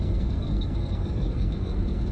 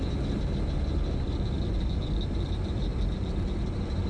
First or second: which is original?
second